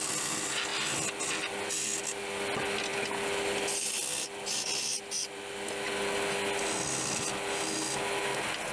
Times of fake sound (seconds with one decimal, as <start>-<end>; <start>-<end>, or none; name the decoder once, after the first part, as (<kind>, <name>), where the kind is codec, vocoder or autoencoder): none